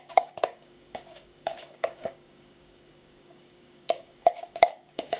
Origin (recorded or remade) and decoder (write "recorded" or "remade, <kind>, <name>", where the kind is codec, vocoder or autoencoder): remade, codec, DAC